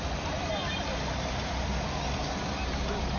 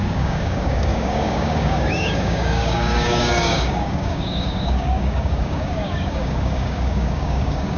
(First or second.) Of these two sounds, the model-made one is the second